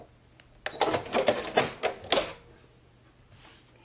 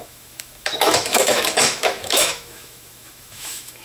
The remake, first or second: second